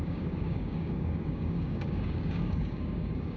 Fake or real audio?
fake